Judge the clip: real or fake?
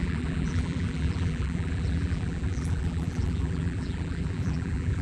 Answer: fake